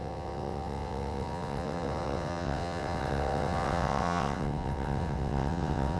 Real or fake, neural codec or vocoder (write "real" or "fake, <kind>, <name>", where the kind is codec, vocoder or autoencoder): fake, vocoder, WaveNeXt